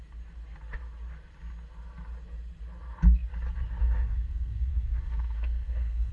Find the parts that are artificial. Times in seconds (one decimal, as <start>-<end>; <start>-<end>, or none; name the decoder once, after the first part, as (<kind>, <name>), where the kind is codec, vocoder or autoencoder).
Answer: 3.8-6.1 (codec, SNAC)